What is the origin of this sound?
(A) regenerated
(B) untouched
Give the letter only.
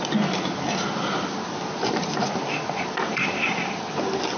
B